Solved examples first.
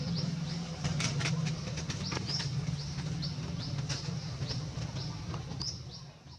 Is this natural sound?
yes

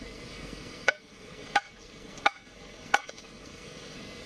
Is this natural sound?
no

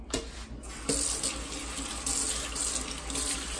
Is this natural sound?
yes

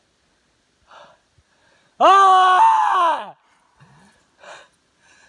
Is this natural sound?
yes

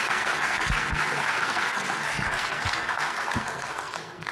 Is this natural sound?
no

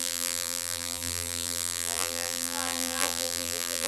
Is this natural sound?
no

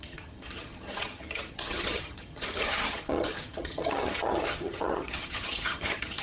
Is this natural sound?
no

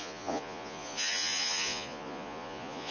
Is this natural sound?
no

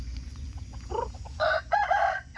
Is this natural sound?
no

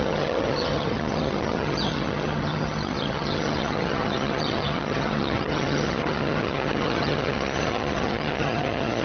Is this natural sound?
no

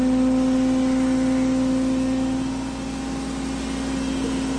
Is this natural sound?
yes